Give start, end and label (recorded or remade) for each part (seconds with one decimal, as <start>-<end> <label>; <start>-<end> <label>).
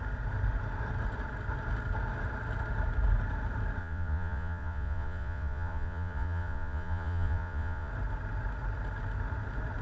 0.0-3.8 recorded; 3.8-7.9 remade; 7.9-9.8 recorded